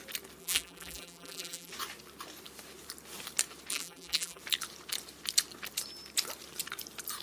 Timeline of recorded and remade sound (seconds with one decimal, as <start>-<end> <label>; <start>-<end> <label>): 0.0-0.4 recorded; 0.4-1.7 remade; 1.7-3.7 recorded; 3.7-4.4 remade; 4.4-7.2 recorded